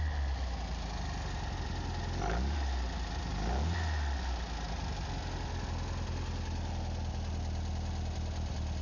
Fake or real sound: real